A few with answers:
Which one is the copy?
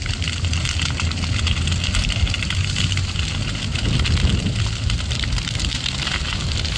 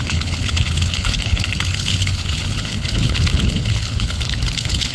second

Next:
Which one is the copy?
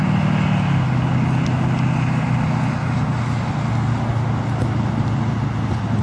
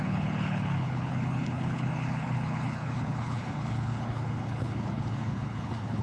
second